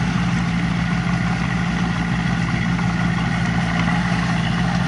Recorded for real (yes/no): yes